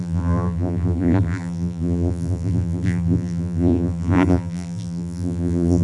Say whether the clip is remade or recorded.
remade